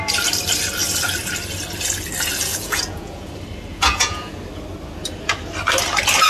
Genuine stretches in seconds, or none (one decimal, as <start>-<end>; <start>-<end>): 0.0-2.5; 3.3-3.7; 4.3-6.3